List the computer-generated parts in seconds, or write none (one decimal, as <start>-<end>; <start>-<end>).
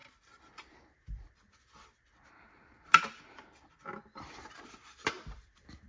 none